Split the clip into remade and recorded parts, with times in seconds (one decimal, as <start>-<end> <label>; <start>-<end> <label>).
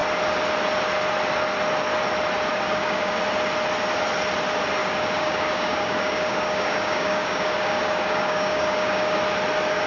0.0-2.5 recorded; 2.5-3.2 remade; 3.2-4.8 recorded; 4.8-9.2 remade; 9.2-9.9 recorded